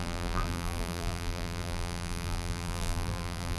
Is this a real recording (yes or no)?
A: no